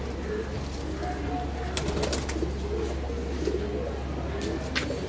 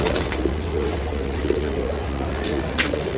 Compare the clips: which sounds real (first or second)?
first